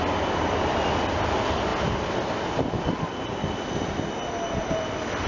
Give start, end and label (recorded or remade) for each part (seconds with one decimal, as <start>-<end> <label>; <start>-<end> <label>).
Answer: 0.0-5.3 recorded